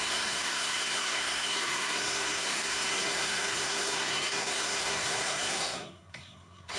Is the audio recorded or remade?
remade